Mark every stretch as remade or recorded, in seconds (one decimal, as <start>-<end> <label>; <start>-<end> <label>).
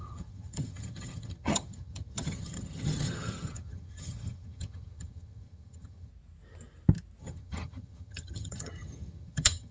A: 0.0-6.1 remade; 6.1-7.2 recorded; 7.2-9.7 remade